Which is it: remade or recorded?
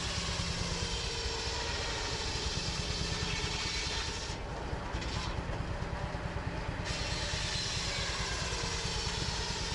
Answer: recorded